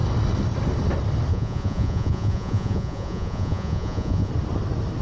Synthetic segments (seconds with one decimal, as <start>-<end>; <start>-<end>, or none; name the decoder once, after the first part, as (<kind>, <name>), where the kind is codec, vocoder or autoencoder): 1.3-4.3 (vocoder, Vocos)